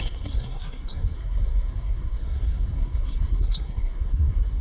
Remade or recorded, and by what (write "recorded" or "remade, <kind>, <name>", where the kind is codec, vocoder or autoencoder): remade, codec, SNAC